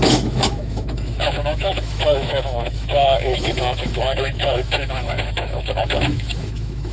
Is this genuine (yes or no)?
no